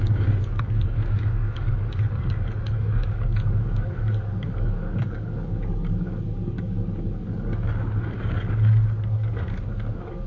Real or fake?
fake